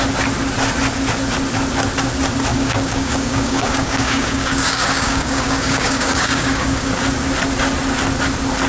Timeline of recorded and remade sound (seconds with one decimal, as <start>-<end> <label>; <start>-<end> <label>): 0.0-2.5 recorded; 2.5-6.9 remade; 6.9-8.7 recorded